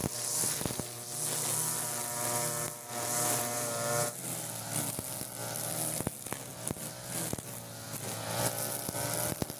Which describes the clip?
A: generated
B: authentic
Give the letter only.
B